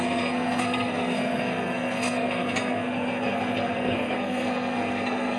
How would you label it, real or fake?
fake